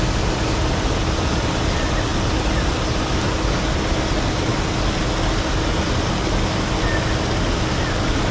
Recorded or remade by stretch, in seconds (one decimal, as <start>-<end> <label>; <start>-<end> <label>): 0.0-8.3 recorded